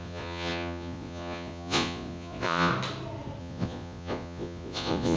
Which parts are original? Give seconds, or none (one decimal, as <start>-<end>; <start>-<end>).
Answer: 2.7-3.4